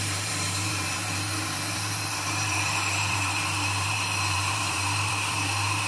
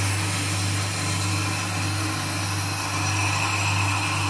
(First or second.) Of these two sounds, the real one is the second